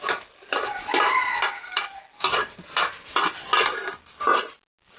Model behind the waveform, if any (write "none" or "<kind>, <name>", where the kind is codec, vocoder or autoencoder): none